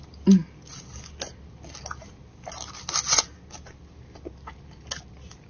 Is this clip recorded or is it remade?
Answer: recorded